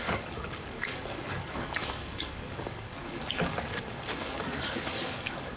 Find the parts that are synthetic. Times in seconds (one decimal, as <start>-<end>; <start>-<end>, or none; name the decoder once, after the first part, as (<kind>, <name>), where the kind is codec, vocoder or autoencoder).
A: 0.0-5.6 (codec, DAC)